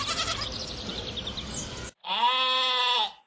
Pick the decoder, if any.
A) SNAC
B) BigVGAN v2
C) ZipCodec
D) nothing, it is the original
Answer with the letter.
D